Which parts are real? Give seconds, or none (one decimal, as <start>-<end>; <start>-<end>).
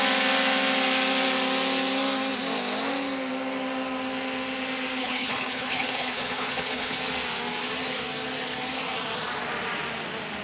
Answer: 0.0-5.0; 7.0-10.4